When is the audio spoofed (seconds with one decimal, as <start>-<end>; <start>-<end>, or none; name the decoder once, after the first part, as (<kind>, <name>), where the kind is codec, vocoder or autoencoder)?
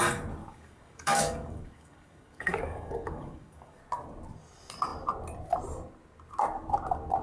0.4-3.8 (codec, DAC)